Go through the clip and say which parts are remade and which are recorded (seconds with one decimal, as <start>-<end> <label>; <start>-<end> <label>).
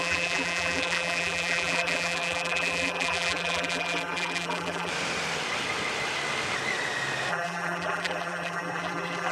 0.0-4.9 remade; 4.9-7.3 recorded; 7.3-9.3 remade